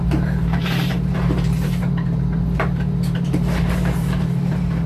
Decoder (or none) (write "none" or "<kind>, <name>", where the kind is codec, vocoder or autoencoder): vocoder, BigVGAN v2